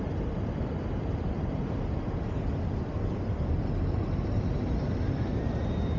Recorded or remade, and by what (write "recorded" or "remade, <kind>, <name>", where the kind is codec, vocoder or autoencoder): recorded